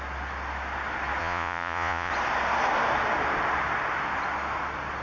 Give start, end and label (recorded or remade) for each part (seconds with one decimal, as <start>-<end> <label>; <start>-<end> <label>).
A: 0.0-1.2 recorded; 1.2-2.1 remade; 2.1-5.0 recorded